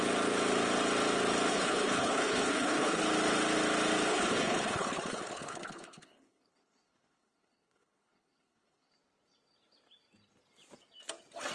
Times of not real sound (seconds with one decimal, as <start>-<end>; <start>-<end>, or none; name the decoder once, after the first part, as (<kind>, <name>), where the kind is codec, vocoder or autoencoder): 1.5-3.0 (codec, HILCodec); 4.1-8.9